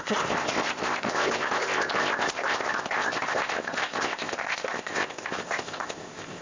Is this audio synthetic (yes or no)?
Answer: yes